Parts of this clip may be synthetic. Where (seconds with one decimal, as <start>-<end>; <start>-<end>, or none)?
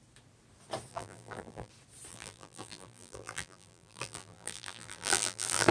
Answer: 0.9-1.7; 2.1-5.7